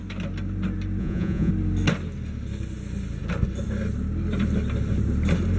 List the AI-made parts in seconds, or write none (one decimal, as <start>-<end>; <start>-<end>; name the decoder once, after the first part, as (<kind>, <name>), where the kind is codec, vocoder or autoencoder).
1.0-1.5 (vocoder, Vocos)